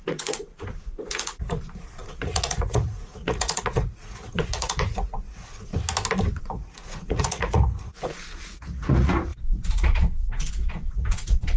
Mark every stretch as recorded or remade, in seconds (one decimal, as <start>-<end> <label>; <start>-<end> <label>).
0.0-5.7 remade; 5.7-6.4 recorded; 6.4-11.6 remade